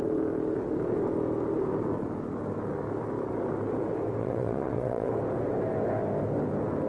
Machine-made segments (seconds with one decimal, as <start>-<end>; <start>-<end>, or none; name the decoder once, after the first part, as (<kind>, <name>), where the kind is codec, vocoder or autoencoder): 4.2-5.1 (vocoder, WaveNeXt)